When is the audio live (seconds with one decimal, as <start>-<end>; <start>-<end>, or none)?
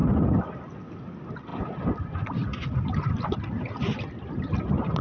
0.0-1.5; 3.1-5.0